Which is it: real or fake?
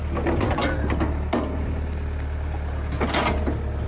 real